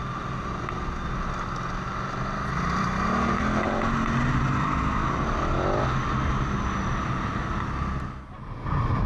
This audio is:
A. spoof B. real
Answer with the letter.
B